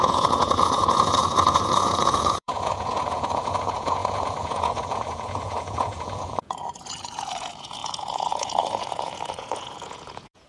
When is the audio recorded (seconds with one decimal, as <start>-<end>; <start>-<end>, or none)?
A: none